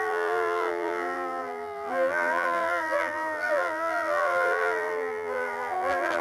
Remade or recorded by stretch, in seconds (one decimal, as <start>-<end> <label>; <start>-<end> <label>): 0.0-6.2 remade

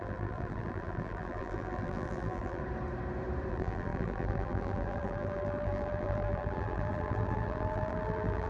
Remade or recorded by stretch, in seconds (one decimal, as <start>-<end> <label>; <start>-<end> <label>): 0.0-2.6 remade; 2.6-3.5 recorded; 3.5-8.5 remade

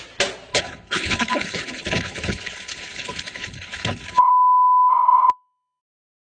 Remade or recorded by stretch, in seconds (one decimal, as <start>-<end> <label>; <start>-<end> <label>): 0.0-0.5 recorded; 0.5-4.3 remade; 4.3-4.9 recorded; 4.9-5.8 remade; 5.8-6.3 recorded

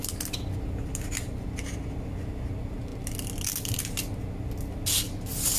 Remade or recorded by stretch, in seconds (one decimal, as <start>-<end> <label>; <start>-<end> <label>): 0.0-5.6 recorded

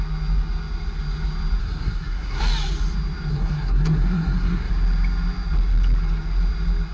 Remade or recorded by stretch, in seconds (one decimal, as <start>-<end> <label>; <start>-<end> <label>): 0.0-1.6 recorded; 1.6-2.4 remade; 2.4-3.3 recorded; 3.3-4.7 remade; 4.7-6.9 recorded

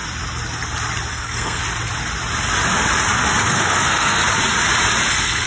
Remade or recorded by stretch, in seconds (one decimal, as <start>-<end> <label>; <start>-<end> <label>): 0.0-1.1 recorded; 1.1-1.6 remade; 1.6-3.4 recorded; 3.4-4.2 remade; 4.2-5.1 recorded; 5.1-5.5 remade

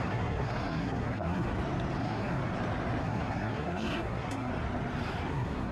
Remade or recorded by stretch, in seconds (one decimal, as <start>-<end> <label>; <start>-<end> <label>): 0.0-1.5 remade; 1.5-2.0 recorded; 2.0-2.4 remade; 2.4-3.0 recorded; 3.0-4.5 remade; 4.5-5.3 recorded; 5.3-5.7 remade

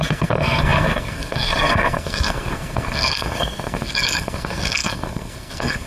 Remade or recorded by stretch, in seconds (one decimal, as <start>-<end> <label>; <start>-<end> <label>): 0.0-5.9 remade